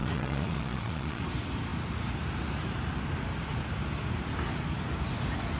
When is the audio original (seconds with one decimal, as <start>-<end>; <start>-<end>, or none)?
1.2-5.6